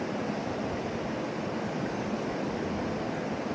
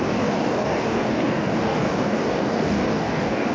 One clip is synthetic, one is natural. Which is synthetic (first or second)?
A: second